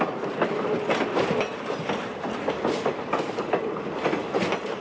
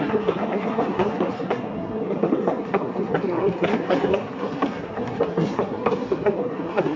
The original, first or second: first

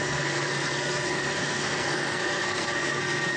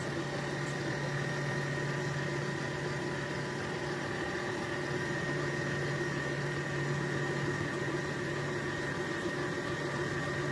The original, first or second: second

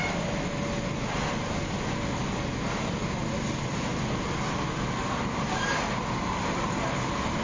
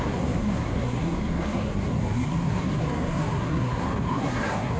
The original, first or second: first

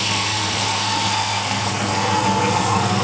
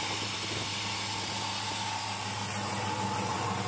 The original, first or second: second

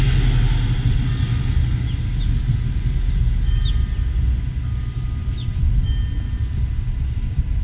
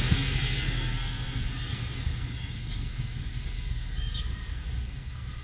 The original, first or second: first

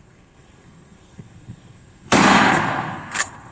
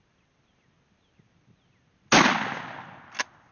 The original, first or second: second